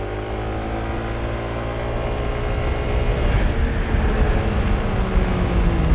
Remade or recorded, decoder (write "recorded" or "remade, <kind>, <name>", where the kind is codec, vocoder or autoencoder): recorded